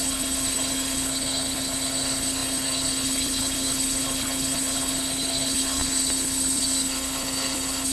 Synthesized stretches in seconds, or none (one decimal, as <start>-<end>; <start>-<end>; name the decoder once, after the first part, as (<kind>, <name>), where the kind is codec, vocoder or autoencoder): 0.0-7.9 (codec, HILCodec)